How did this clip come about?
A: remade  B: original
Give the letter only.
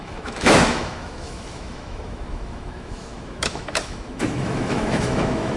A